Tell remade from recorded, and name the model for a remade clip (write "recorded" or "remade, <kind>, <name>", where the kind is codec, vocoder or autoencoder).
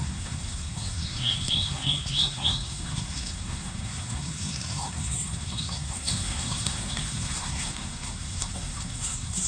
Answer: remade, codec, SNAC